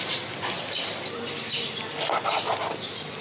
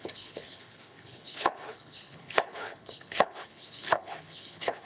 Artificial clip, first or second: second